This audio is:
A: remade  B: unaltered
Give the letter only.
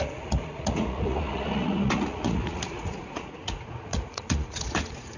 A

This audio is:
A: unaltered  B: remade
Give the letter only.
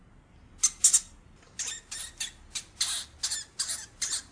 A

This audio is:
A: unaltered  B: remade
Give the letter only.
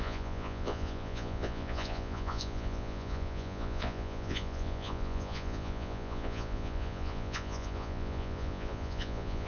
B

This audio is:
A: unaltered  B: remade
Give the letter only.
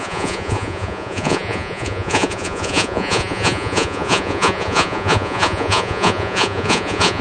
B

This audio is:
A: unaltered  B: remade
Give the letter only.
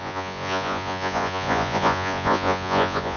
B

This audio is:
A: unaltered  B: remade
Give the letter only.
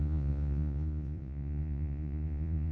B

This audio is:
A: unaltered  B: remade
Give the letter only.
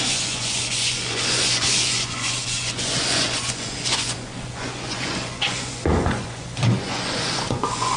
B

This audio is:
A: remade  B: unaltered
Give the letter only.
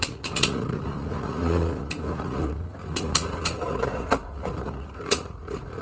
A